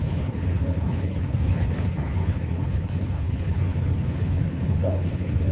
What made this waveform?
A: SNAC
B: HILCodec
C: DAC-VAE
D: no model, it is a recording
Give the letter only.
B